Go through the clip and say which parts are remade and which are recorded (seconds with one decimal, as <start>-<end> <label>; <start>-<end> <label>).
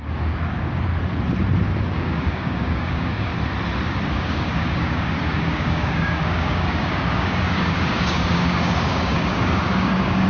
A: 0.0-0.9 remade; 0.9-1.9 recorded; 1.9-3.3 remade; 3.3-4.1 recorded; 4.1-10.3 remade